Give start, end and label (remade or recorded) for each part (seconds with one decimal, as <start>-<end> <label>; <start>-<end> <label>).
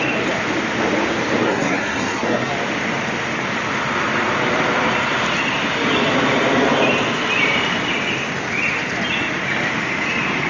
0.0-1.4 recorded; 1.4-2.5 remade; 2.5-10.5 recorded